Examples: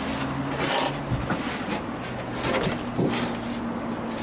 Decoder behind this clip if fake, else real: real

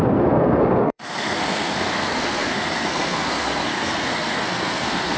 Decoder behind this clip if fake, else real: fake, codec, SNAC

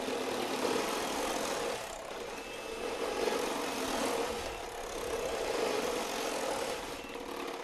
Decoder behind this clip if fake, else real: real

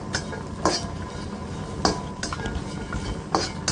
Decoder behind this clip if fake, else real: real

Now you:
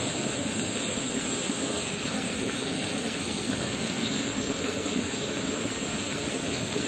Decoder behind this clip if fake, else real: fake, codec, SNAC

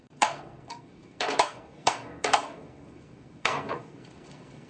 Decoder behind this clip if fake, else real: fake, codec, SNAC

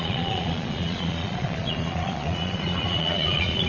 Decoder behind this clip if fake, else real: fake, vocoder, Vocos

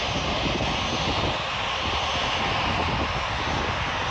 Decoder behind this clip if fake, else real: real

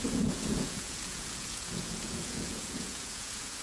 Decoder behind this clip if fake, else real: fake, vocoder, Vocos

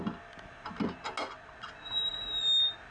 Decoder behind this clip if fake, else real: real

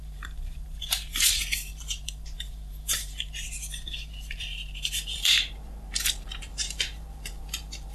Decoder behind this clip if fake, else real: fake, vocoder, BigVGAN v2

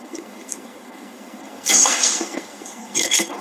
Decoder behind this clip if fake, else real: fake, codec, SNAC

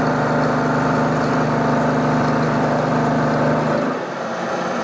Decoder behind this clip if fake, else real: fake, vocoder, BigVGAN v2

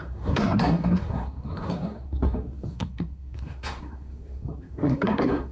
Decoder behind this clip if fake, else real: fake, codec, SNAC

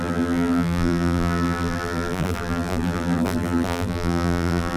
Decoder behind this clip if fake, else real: fake, vocoder, BigVGAN v2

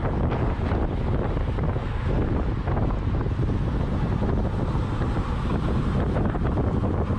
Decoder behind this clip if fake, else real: real